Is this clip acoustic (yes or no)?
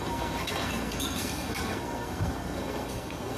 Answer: no